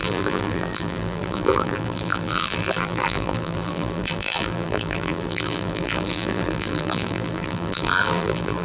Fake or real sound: fake